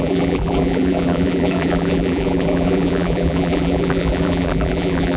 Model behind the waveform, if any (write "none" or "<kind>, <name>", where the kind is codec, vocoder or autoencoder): vocoder, BigVGAN v2